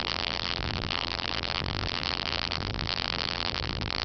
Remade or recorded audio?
remade